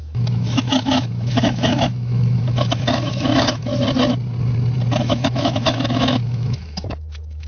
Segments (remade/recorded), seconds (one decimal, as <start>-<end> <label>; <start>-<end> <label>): 0.0-3.7 remade; 3.7-5.0 recorded; 5.0-7.5 remade